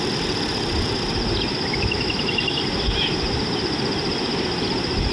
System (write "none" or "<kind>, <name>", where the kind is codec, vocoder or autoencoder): none